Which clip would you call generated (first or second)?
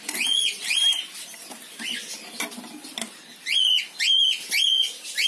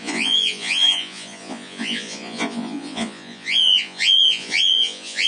second